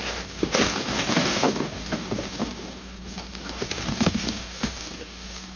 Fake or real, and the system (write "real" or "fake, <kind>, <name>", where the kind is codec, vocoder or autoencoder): fake, codec, DAC